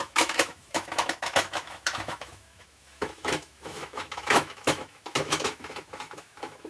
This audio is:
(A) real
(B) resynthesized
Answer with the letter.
B